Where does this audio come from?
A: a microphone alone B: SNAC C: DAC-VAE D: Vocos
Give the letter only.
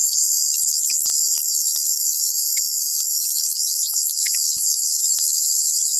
C